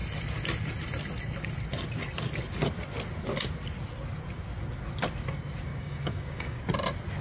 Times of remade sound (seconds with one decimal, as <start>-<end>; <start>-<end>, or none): 5.7-6.6